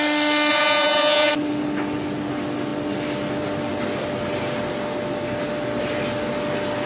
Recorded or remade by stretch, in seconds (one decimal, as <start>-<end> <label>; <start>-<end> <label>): 0.0-0.5 recorded; 0.5-1.3 remade; 1.3-6.9 recorded